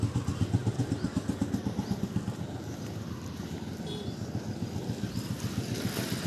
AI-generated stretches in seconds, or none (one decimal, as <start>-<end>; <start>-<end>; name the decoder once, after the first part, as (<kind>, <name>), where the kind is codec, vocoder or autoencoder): none